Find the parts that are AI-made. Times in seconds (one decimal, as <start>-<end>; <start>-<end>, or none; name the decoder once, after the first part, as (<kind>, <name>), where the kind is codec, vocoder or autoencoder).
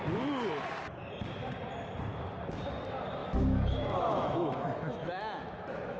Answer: 3.2-6.0 (autoencoder, DAC-VAE)